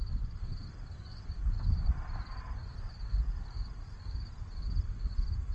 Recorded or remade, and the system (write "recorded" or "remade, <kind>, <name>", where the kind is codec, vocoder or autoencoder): recorded